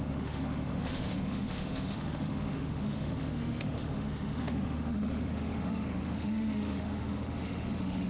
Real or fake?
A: fake